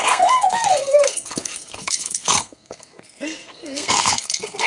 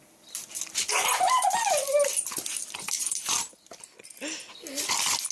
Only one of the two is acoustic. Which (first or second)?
second